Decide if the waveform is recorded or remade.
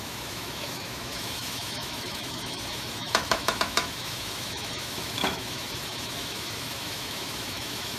remade